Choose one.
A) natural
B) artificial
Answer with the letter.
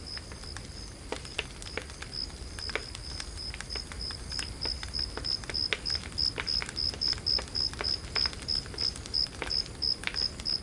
A